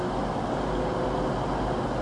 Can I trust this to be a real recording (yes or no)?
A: yes